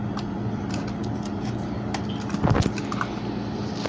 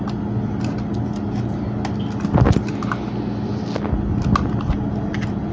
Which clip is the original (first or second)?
second